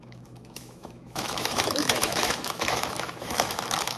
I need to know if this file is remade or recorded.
remade